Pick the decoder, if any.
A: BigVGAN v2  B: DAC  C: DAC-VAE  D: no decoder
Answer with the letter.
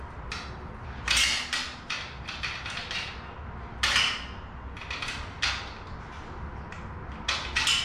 D